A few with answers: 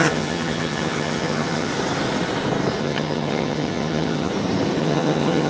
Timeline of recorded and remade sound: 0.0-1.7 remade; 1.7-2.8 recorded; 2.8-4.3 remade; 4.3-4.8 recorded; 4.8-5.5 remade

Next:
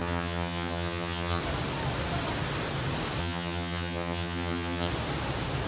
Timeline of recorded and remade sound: 0.0-1.4 remade; 1.4-3.2 recorded; 3.2-4.9 remade; 4.9-5.7 recorded

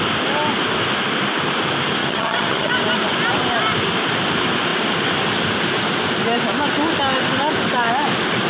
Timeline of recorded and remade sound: 0.0-2.0 recorded; 2.0-2.7 remade; 2.7-8.5 recorded

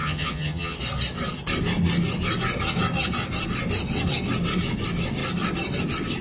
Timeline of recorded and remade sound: 0.0-0.8 remade; 0.8-6.2 recorded